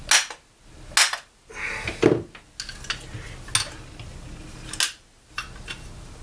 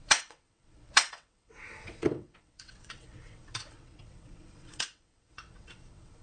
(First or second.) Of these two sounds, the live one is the first